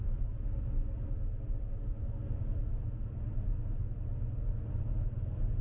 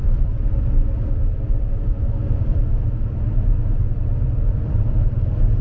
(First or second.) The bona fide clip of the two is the first